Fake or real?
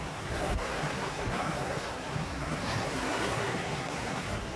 fake